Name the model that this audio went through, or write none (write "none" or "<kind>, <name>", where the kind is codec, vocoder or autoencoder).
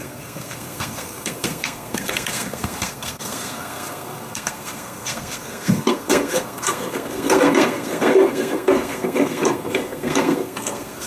codec, SNAC